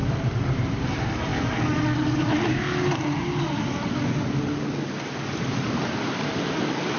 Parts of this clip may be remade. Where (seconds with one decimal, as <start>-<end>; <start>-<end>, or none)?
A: 0.0-1.3; 5.4-7.0